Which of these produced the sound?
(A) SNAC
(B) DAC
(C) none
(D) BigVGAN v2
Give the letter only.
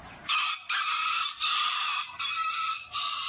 D